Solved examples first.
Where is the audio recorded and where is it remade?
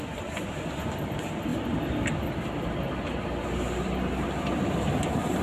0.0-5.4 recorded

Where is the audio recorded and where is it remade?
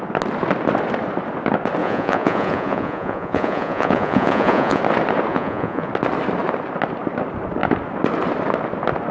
0.0-1.8 recorded; 1.8-4.8 remade; 4.8-5.3 recorded; 5.3-5.9 remade; 5.9-9.1 recorded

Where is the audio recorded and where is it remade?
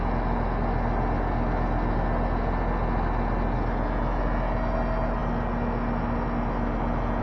0.0-7.2 recorded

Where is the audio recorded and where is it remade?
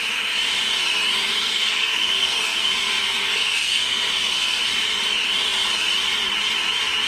0.0-1.3 recorded; 1.3-4.6 remade; 4.6-7.1 recorded